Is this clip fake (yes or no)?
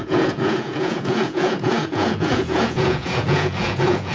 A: yes